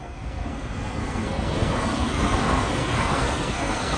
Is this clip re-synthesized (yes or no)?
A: yes